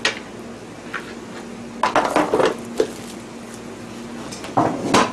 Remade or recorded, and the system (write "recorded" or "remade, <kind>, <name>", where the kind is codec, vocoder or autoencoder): recorded